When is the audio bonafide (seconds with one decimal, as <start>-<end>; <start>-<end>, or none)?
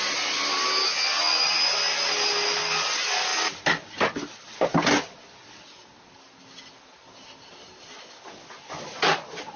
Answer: 0.0-9.6